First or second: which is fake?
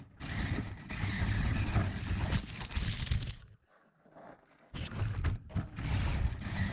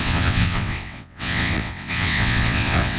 second